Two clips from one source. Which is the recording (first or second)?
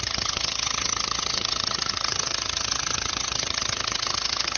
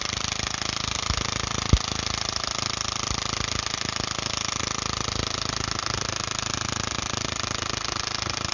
second